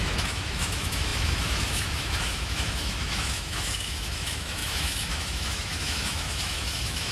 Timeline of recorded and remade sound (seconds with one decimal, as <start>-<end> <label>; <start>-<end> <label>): 0.0-7.1 remade